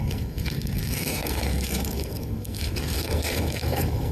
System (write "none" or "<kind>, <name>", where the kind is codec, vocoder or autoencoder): codec, SNAC